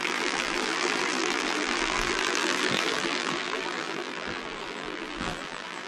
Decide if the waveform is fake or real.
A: fake